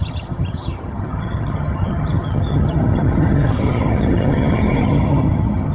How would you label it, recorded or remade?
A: remade